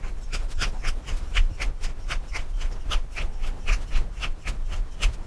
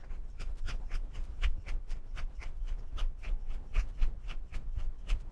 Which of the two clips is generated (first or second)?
second